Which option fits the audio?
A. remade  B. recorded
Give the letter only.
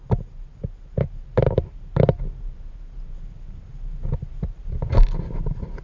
B